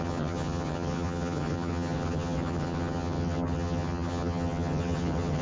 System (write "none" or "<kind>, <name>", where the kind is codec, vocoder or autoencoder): vocoder, HiFi-GAN